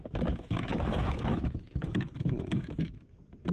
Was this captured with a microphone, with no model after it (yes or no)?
no